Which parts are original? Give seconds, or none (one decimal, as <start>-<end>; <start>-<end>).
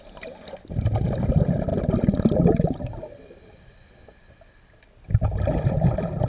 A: 0.0-6.3